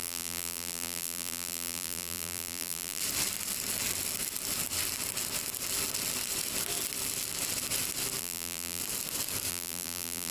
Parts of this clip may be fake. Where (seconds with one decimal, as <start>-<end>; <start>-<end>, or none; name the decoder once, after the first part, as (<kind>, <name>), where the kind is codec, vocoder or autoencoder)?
0.0-3.0 (vocoder, BigVGAN v2); 8.2-8.8; 9.5-10.3